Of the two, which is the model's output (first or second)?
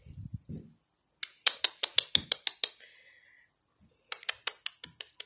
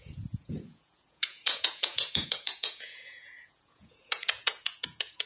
second